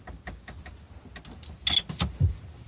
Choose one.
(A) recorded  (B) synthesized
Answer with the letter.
A